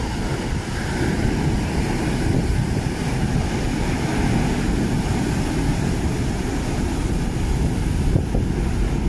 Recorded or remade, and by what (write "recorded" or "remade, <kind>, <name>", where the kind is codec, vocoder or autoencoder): recorded